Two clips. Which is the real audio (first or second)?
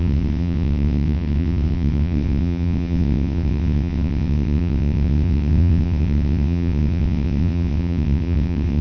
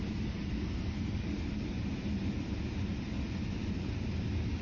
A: second